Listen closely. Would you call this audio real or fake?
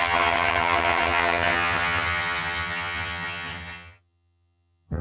fake